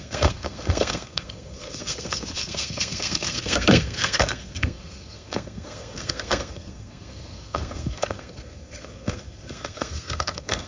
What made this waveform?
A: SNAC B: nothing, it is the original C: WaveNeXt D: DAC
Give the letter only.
A